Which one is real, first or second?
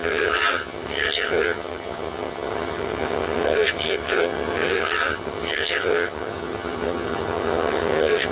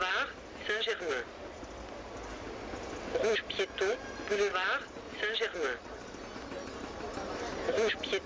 second